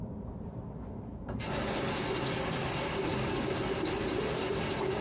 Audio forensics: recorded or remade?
remade